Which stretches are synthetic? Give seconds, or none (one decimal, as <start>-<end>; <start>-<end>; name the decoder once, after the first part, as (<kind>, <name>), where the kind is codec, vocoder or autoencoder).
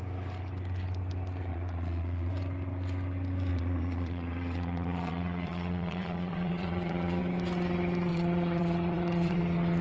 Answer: 1.5-2.3 (vocoder, Vocos); 3.5-7.2; 8.1-9.4